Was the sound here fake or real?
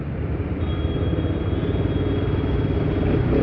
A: real